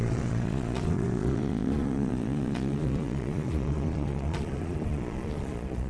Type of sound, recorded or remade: remade